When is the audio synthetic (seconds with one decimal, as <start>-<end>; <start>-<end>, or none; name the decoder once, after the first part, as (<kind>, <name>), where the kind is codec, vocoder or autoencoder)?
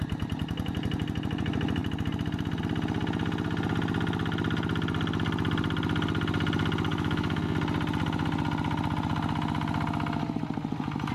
6.9-7.4 (autoencoder, DAC-VAE)